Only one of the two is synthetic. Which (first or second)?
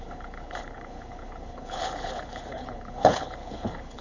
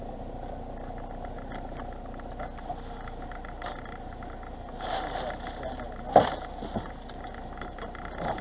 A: first